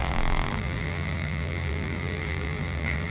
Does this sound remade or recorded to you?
remade